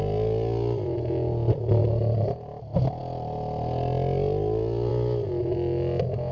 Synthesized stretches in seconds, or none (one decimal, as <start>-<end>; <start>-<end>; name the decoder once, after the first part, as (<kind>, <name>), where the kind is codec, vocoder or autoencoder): 1.8-2.5 (vocoder, BigVGAN v2)